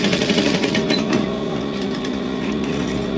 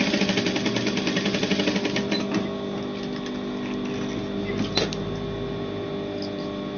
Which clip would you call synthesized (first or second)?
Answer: first